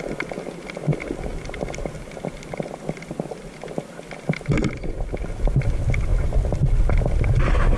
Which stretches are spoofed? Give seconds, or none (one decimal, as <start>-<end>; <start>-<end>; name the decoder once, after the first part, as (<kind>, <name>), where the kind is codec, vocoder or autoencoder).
none